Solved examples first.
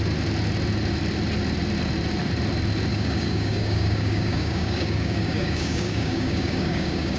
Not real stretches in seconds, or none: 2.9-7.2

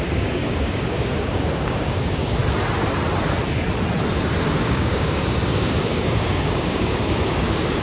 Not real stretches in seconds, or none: 0.0-2.4; 4.4-7.8

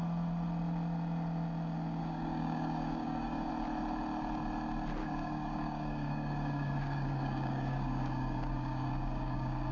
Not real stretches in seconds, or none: 2.0-3.5; 5.0-9.7

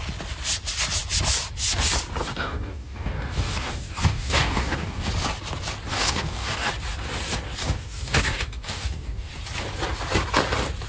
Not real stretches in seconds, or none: 2.2-5.1; 5.9-6.7; 7.6-9.3

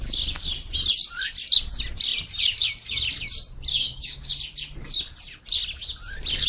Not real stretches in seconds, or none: 3.7-4.3

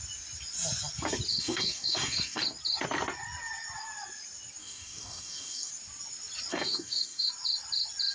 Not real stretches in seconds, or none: 1.3-2.4; 4.6-5.7; 6.5-7.3

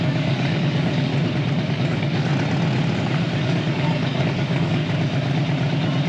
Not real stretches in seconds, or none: 0.0-1.1; 1.7-2.3; 3.4-4.8

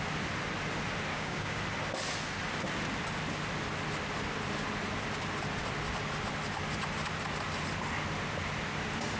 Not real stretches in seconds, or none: 1.1-1.6